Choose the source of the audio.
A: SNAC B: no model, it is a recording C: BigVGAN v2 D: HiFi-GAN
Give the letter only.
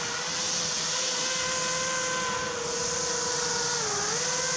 B